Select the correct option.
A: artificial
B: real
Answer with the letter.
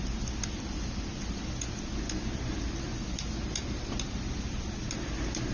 B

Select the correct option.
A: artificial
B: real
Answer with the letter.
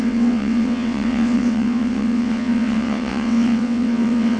A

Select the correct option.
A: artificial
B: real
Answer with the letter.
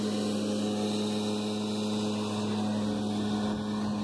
B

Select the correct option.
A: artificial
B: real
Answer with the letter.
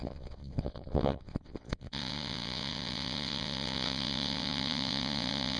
A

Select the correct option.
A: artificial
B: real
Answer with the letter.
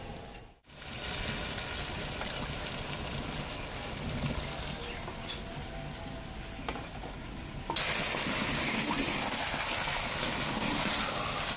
B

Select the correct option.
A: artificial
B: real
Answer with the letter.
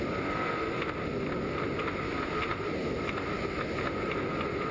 B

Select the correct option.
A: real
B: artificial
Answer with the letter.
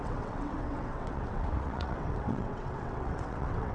B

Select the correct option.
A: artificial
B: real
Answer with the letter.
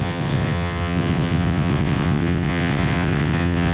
A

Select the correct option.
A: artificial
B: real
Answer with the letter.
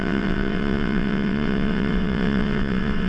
A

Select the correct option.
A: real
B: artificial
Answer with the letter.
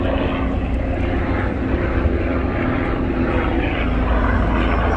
A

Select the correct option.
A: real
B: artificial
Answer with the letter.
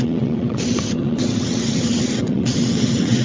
B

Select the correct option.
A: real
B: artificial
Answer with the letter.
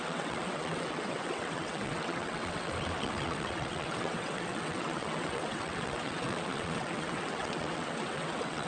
B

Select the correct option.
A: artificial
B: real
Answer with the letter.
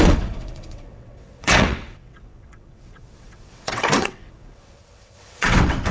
A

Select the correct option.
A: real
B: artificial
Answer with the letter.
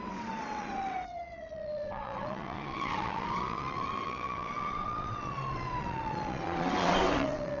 B